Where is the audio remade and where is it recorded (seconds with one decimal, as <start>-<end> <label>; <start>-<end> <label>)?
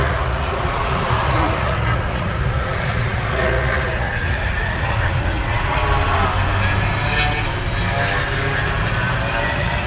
0.0-5.8 remade; 5.8-9.5 recorded; 9.5-9.9 remade